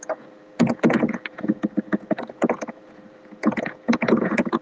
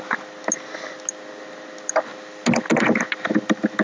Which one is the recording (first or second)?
second